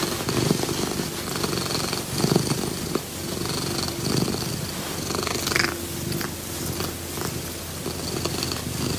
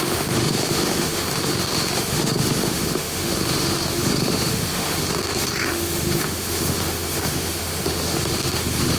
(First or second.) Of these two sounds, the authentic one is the first